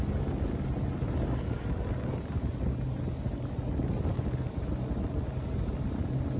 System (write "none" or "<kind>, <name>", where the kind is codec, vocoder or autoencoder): none